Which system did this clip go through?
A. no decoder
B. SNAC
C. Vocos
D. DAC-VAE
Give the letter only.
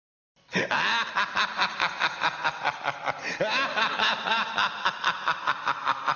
A